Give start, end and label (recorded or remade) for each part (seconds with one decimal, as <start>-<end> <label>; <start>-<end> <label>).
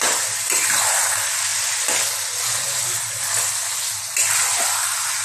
0.0-5.2 recorded